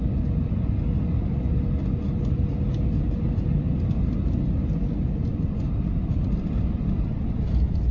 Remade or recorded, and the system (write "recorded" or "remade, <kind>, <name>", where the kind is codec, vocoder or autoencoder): recorded